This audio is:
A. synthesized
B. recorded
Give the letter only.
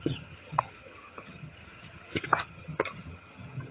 A